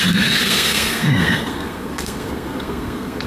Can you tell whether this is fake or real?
fake